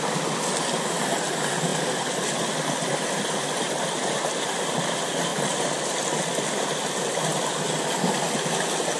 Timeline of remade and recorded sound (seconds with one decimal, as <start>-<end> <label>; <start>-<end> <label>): 0.0-9.0 recorded